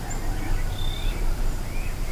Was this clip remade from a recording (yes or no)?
no